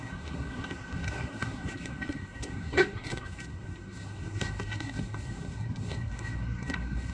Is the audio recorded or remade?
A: remade